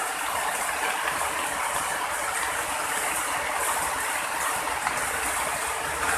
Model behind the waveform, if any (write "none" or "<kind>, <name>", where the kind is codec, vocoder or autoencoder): none